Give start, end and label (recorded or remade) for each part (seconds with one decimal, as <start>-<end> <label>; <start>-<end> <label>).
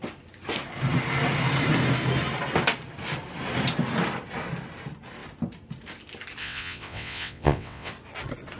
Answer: 0.0-6.4 recorded; 6.4-7.9 remade; 7.9-8.6 recorded